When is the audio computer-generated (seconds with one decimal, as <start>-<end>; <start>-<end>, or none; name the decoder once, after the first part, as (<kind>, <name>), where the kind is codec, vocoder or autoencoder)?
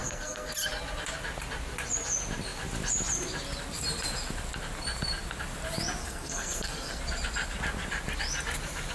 0.0-0.5 (codec, SNAC); 6.0-7.0